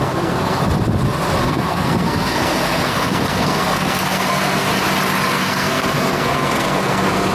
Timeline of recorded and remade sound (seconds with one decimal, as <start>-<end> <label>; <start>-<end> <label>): 0.0-0.6 remade; 0.6-1.4 recorded; 1.4-4.7 remade; 4.7-5.3 recorded; 5.3-7.3 remade